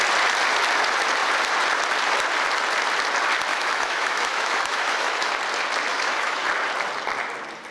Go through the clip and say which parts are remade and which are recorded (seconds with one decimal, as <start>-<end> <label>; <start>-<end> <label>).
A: 0.0-3.5 recorded; 3.5-5.3 remade; 5.3-5.9 recorded; 5.9-6.4 remade; 6.4-7.7 recorded